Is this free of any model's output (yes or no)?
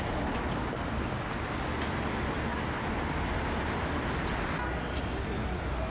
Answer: yes